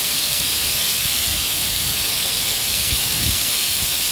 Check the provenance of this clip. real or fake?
fake